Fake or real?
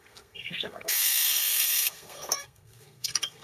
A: fake